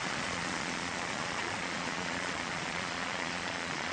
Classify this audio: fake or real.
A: fake